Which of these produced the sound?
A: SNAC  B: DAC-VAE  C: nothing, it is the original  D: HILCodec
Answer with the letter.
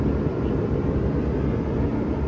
C